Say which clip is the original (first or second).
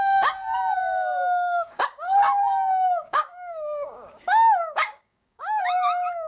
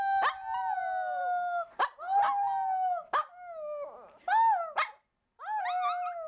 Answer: second